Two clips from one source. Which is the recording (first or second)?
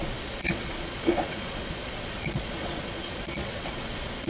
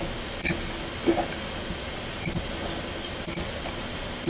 second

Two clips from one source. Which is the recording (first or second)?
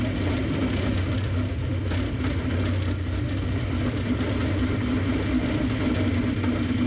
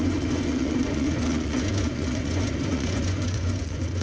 first